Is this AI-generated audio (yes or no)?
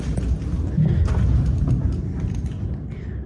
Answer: no